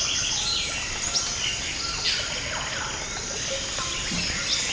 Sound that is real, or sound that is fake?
real